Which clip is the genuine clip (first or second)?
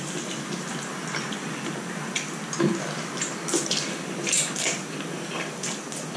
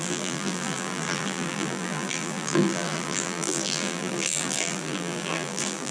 first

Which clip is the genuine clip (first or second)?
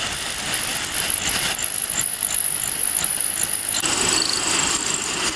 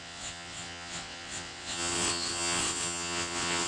first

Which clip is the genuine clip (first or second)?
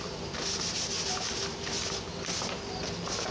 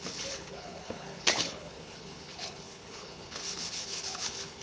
first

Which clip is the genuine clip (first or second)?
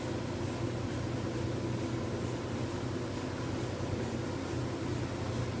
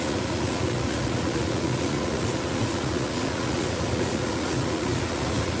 first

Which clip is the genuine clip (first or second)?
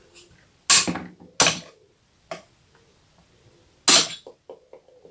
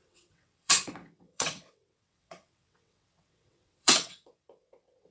first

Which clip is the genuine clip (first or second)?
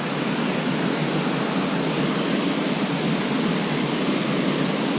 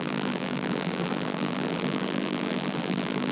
first